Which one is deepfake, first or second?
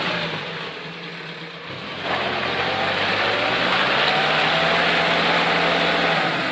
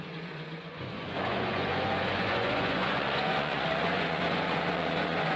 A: second